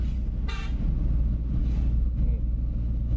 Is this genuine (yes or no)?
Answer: yes